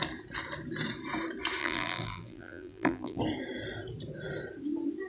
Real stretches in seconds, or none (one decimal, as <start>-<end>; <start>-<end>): 0.0-1.6; 3.2-5.1